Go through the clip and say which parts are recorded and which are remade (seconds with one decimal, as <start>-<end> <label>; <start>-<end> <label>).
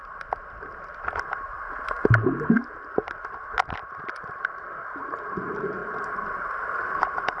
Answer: 0.0-3.9 recorded; 3.9-5.8 remade; 5.8-6.8 recorded; 6.8-7.4 remade